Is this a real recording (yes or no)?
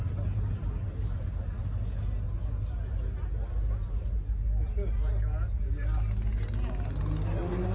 yes